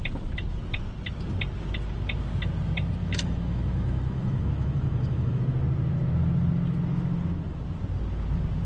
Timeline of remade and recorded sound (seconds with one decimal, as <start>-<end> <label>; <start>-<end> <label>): 0.0-3.0 recorded; 3.0-5.4 remade; 5.4-8.7 recorded